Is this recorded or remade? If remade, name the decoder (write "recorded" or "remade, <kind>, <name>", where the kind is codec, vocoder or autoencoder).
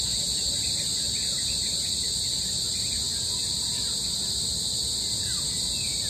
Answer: recorded